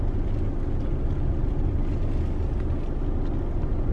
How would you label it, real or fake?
real